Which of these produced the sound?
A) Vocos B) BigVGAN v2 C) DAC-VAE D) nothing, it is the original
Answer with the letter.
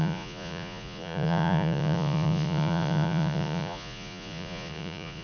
A